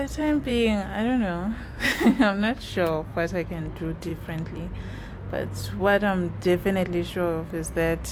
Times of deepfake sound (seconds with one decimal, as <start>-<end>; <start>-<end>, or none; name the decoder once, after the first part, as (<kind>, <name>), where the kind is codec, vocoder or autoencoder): 0.5-2.7 (autoencoder, DAC-VAE); 3.1-3.6